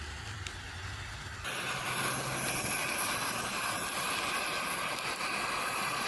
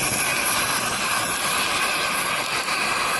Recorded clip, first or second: second